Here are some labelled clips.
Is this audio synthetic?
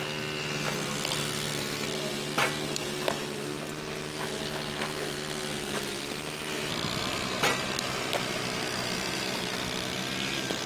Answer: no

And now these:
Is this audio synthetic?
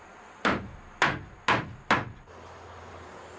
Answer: no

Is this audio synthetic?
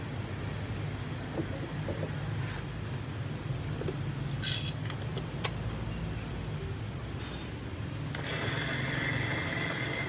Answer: no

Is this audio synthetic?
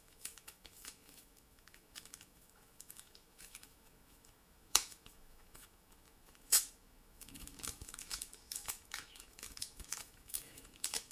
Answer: yes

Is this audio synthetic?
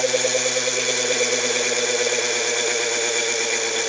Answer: yes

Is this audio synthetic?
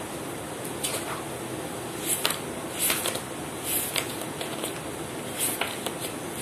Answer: no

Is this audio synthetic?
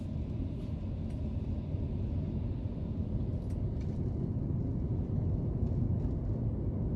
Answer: no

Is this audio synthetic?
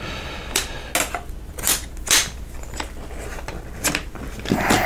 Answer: no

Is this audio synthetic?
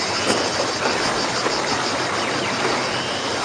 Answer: no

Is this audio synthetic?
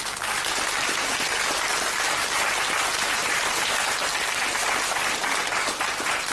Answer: no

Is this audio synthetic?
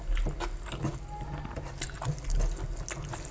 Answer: no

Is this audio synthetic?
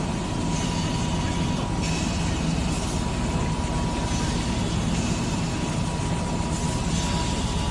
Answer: no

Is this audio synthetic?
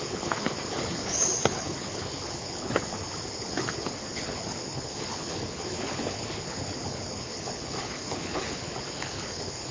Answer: yes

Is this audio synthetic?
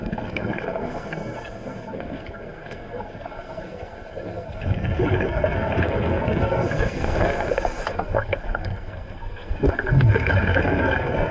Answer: yes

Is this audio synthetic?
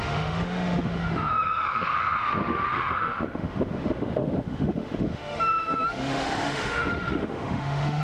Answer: yes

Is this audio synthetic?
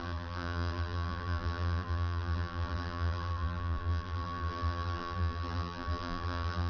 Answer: yes